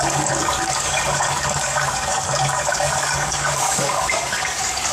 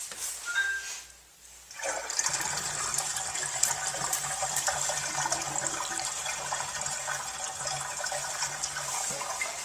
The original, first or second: second